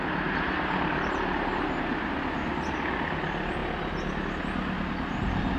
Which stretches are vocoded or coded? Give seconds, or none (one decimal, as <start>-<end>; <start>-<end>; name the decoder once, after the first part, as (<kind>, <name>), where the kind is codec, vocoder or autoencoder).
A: none